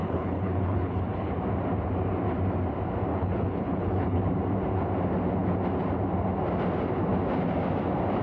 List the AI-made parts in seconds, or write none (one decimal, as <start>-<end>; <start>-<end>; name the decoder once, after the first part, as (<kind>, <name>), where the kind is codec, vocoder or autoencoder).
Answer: 0.0-1.3 (codec, HILCodec); 3.1-4.3